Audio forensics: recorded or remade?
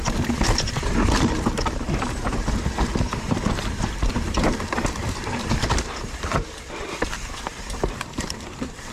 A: remade